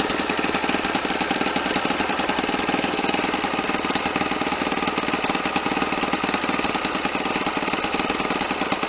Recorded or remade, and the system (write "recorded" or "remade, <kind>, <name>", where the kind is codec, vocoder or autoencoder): recorded